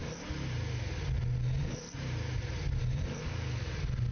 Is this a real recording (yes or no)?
yes